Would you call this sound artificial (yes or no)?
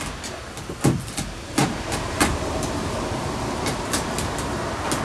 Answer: no